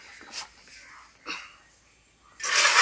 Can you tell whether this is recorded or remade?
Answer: recorded